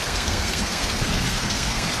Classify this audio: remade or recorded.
remade